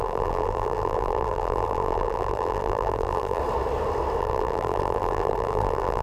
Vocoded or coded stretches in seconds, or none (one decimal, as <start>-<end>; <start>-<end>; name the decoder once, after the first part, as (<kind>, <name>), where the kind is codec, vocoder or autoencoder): 0.0-3.4 (vocoder, BigVGAN v2); 4.2-6.0